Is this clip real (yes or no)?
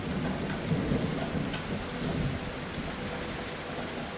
yes